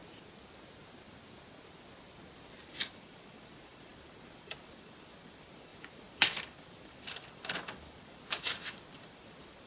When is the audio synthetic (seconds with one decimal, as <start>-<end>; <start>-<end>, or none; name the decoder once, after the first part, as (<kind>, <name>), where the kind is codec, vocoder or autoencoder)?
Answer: 2.6-9.7 (vocoder, BigVGAN v2)

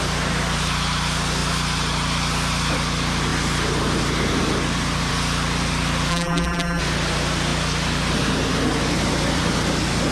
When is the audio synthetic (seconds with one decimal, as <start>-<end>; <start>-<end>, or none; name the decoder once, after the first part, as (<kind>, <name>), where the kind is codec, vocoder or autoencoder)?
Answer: 6.1-6.8 (vocoder, BigVGAN v2)

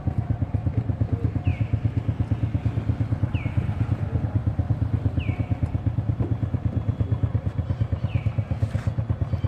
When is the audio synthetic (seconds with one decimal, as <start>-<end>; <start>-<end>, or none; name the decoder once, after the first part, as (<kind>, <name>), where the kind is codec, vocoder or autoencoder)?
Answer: none

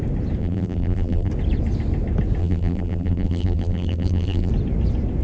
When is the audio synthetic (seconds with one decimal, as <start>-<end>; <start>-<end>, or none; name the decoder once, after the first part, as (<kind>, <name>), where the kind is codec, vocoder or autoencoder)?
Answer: 0.4-1.3 (vocoder, BigVGAN v2); 2.4-4.5

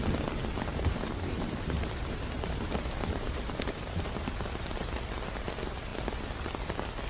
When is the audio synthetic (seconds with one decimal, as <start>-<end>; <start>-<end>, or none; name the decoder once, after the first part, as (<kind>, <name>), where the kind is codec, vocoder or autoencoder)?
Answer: 0.7-4.3 (vocoder, BigVGAN v2)

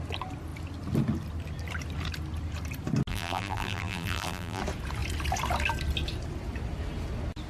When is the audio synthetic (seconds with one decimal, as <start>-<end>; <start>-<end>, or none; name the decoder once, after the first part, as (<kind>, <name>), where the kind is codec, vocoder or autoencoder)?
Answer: 3.1-4.6 (vocoder, BigVGAN v2)

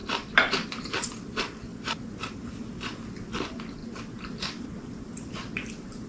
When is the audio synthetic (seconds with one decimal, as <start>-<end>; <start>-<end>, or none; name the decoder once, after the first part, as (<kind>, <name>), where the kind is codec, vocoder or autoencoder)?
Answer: 0.0-0.9 (vocoder, BigVGAN v2); 1.7-2.5; 3.8-5.0

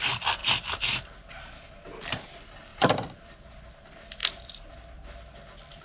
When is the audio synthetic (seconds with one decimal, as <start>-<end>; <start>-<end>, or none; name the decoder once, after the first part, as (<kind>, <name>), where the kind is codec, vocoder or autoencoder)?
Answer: 0.4-1.0 (vocoder, BigVGAN v2); 2.7-3.5